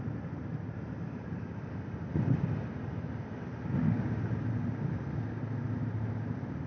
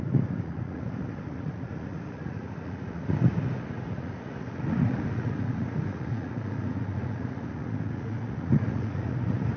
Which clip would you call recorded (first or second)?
first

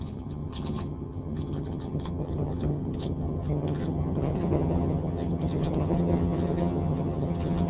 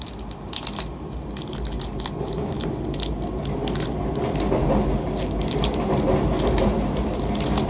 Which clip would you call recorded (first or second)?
second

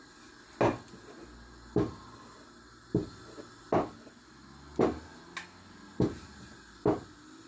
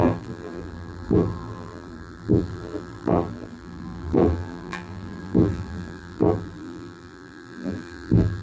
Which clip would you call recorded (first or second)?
first